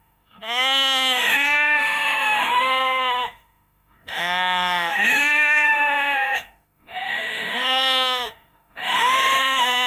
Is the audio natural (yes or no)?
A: no